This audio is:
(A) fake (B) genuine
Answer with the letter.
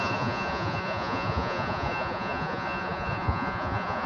A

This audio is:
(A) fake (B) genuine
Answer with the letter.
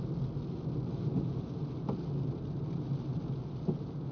B